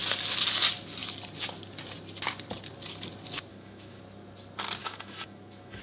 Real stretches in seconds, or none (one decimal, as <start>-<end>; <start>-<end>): 0.0-3.5; 4.0-4.8